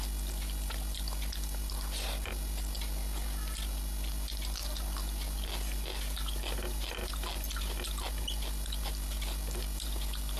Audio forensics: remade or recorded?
recorded